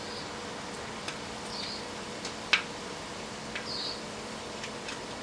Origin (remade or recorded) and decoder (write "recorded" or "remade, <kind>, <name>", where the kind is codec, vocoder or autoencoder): recorded